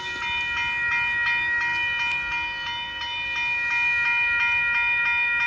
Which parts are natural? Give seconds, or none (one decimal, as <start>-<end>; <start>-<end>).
0.0-5.5